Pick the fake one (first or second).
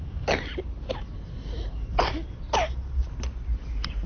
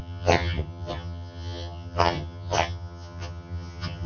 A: second